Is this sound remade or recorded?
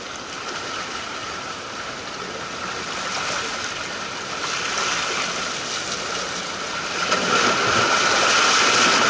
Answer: recorded